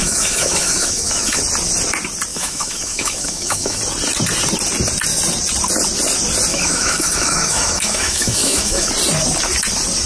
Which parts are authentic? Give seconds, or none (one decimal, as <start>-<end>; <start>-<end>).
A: 1.4-2.3; 3.8-6.5; 8.9-10.1